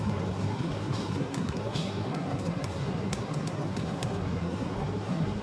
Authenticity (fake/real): fake